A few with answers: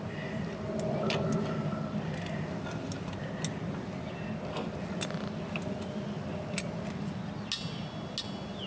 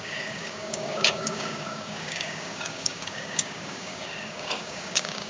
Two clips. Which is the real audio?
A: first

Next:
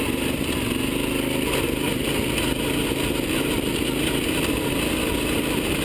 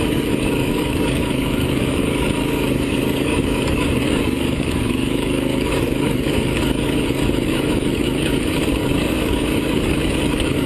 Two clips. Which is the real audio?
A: first